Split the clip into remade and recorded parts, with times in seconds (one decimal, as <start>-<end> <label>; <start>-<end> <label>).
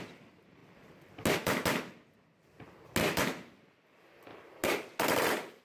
0.0-5.6 recorded